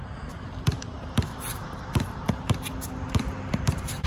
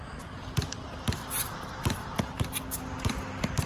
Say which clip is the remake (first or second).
first